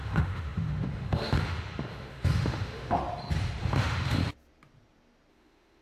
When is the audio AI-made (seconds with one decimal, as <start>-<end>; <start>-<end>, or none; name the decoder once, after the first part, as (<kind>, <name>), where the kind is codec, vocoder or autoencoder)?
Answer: 0.0-3.0 (autoencoder, DAC-VAE); 3.6-4.2; 5.3-5.8